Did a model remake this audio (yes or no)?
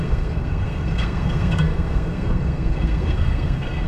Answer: yes